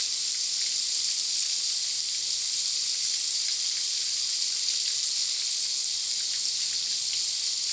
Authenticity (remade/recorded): recorded